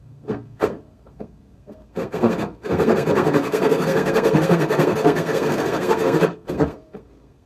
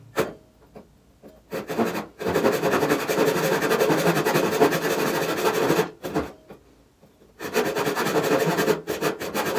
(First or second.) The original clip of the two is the second